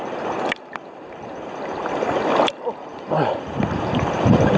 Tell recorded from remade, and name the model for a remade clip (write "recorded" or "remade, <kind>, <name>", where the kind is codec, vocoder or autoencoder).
recorded